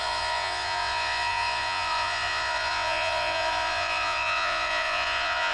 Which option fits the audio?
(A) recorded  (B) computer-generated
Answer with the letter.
B